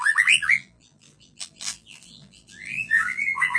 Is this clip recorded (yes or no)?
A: no